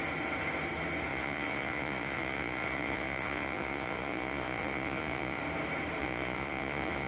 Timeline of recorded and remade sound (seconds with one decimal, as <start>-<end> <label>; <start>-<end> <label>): 0.0-1.1 recorded; 1.1-5.4 remade; 5.4-6.0 recorded; 6.0-7.1 remade